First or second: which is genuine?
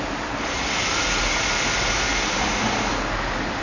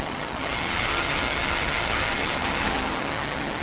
first